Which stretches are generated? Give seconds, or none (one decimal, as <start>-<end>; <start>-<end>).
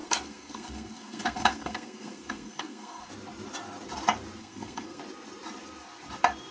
0.0-3.1; 4.4-5.0